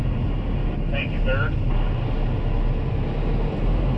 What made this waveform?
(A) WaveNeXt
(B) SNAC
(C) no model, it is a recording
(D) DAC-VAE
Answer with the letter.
C